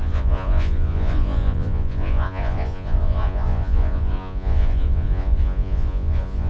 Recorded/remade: remade